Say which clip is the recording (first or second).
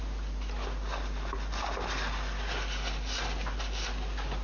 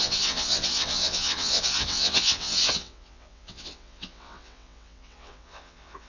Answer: first